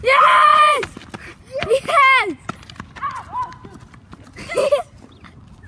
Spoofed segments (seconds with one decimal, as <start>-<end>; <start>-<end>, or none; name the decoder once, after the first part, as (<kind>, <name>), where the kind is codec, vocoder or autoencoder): none